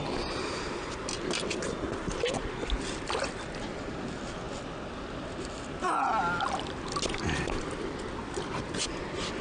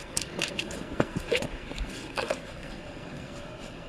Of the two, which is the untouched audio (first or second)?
first